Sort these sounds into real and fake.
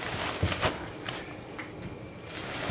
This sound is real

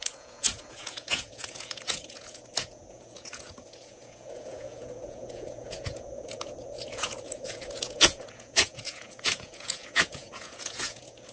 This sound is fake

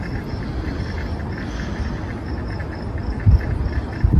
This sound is real